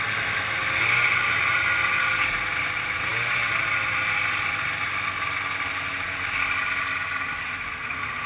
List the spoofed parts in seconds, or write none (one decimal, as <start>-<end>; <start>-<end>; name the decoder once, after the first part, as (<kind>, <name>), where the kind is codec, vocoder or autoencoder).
none